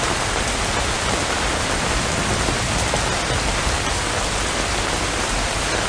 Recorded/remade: recorded